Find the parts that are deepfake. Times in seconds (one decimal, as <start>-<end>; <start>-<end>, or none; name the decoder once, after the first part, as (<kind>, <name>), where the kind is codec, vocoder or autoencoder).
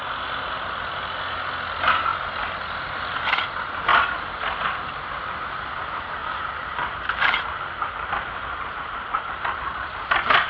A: 6.2-10.1 (vocoder, BigVGAN v2)